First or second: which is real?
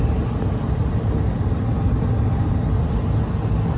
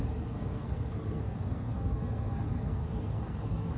first